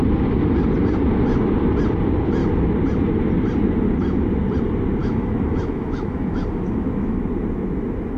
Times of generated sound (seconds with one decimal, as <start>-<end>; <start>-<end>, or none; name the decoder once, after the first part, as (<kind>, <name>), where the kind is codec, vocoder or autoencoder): 5.0-7.2 (autoencoder, DAC-VAE)